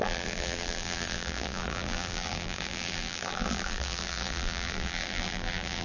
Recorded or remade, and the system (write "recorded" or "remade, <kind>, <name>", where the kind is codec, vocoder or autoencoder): remade, vocoder, BigVGAN v2